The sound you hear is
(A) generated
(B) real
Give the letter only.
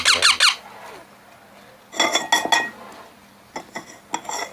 B